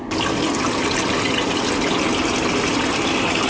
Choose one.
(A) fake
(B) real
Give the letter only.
B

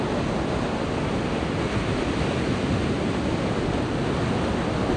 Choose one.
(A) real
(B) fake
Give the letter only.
A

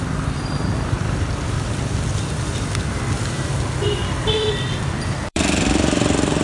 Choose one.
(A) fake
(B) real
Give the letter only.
A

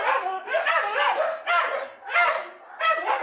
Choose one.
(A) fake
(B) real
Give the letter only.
B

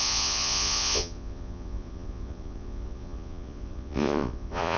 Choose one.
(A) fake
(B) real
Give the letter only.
A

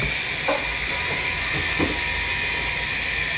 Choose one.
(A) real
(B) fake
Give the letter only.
A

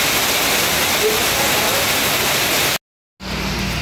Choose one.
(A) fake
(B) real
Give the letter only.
B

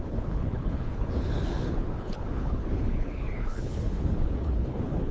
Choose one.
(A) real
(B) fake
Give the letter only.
B